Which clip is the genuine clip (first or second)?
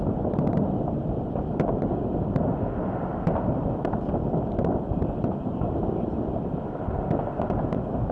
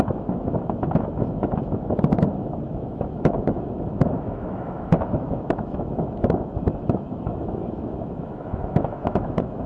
first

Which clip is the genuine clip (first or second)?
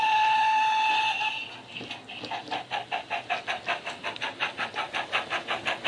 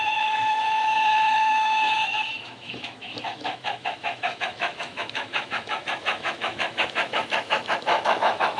first